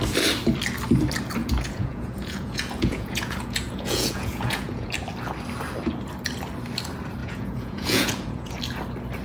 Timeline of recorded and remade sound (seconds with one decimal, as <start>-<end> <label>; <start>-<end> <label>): 0.0-1.4 recorded; 1.4-4.9 remade; 4.9-7.2 recorded; 7.2-8.6 remade; 8.6-9.2 recorded